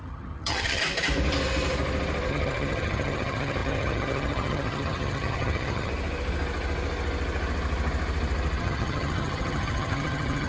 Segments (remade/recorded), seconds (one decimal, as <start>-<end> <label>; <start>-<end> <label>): 0.0-0.8 remade; 0.8-2.3 recorded; 2.3-5.9 remade; 5.9-8.6 recorded; 8.6-10.5 remade